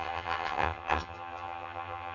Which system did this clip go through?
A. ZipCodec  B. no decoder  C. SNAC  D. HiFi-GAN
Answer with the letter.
D